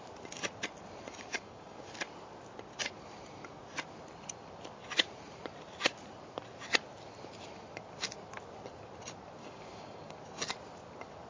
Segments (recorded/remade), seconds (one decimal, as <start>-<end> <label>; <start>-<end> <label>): 0.0-1.3 recorded; 1.3-1.8 remade; 1.8-9.4 recorded; 9.4-10.1 remade; 10.1-11.3 recorded